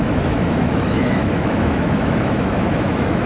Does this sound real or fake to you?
fake